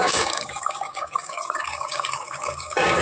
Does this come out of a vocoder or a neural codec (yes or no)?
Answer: yes